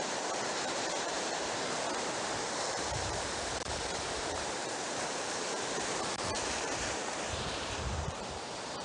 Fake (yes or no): yes